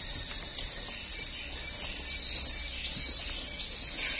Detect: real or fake real